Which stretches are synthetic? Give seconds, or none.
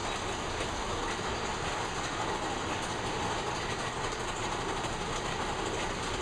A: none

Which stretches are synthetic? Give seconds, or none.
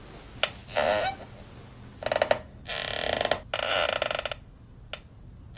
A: none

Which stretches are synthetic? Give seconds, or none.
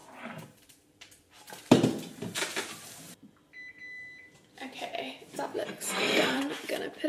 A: 0.0-3.4 (vocoder, BigVGAN v2); 5.5-6.4